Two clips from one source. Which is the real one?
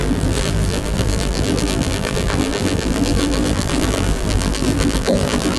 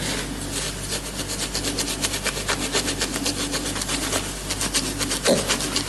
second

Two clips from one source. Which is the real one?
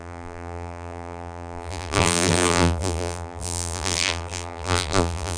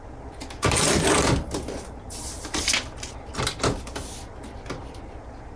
second